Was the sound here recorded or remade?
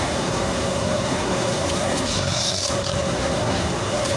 remade